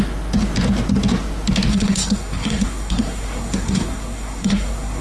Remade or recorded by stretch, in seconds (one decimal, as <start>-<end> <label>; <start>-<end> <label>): 0.0-1.7 recorded; 1.7-5.0 remade